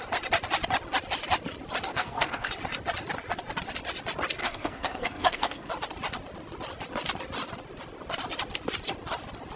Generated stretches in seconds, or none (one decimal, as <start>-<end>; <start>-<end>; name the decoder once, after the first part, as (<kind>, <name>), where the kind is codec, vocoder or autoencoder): 1.9-2.5 (codec, SNAC); 4.4-5.7